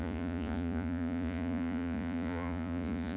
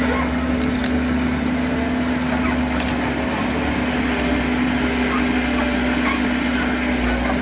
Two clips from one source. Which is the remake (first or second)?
first